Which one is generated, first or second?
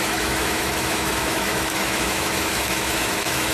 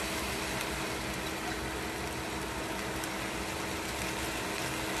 first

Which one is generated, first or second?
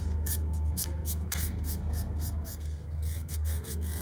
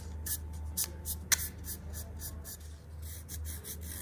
first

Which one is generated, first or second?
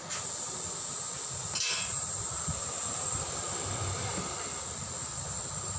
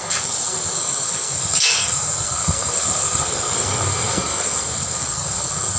second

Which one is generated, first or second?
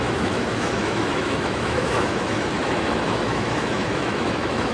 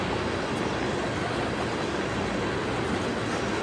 first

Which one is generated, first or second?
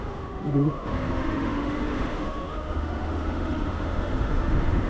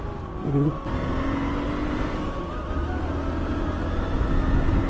first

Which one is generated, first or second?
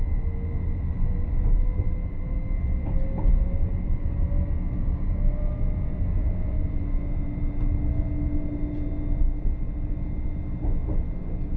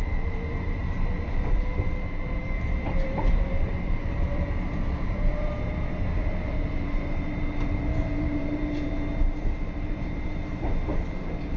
second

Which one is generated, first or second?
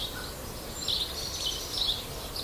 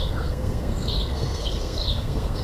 second